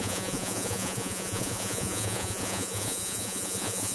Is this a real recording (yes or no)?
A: no